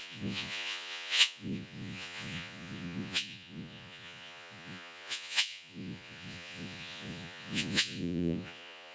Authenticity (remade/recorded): remade